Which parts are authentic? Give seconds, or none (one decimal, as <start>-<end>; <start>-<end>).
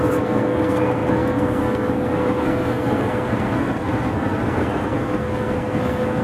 none